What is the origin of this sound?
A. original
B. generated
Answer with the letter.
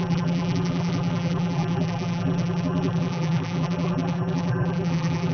B